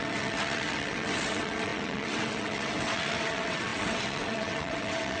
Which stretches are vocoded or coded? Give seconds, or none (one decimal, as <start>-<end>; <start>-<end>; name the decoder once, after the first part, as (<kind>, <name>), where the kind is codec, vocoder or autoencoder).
0.0-5.2 (vocoder, WaveNeXt)